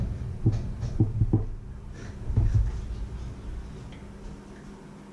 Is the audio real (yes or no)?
yes